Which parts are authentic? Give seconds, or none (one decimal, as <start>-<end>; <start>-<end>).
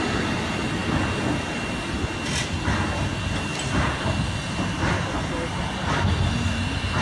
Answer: 0.0-7.0